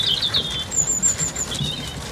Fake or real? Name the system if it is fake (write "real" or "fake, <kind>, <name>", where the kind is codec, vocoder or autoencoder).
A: real